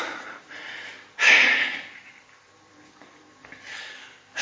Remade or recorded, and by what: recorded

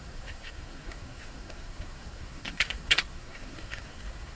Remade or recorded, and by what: remade, codec, SNAC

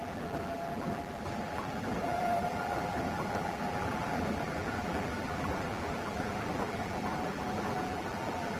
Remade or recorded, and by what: remade, vocoder, BigVGAN v2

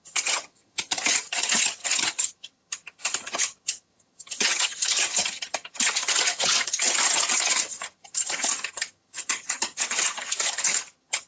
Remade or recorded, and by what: remade, vocoder, HiFi-GAN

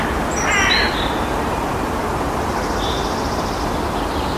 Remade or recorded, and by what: recorded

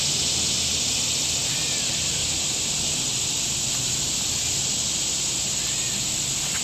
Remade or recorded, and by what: recorded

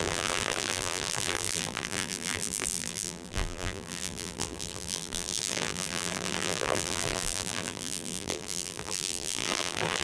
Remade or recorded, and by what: remade, vocoder, BigVGAN v2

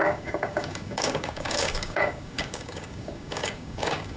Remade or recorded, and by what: remade, codec, DAC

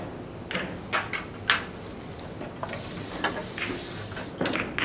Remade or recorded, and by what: recorded